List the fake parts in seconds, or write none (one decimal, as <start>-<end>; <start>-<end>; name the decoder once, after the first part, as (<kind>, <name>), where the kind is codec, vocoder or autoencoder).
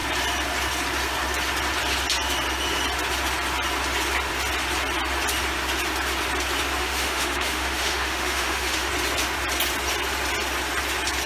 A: 6.8-8.9 (autoencoder, DAC-VAE)